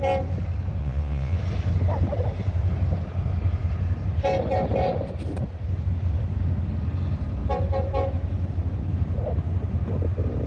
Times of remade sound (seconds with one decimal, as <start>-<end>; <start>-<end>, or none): 0.8-1.4